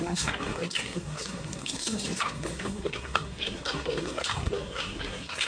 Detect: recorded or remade remade